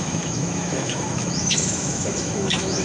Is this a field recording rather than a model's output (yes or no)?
no